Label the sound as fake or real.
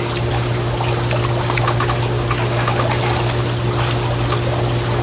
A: real